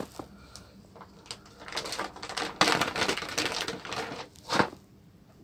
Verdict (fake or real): real